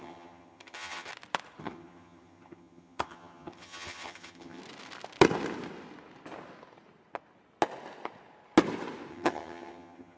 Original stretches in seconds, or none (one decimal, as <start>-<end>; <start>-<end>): 1.1-1.6; 4.6-9.1